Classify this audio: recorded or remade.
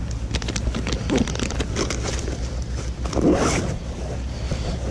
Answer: recorded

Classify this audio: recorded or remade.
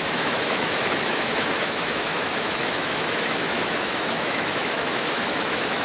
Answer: remade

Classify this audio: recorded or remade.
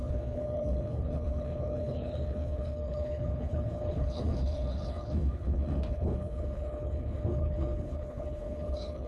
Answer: remade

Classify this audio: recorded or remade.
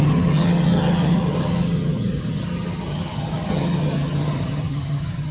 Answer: remade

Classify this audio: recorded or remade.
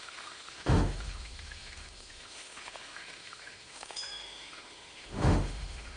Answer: remade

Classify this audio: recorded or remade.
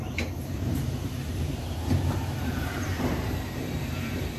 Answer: remade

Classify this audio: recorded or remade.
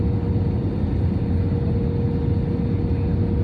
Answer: recorded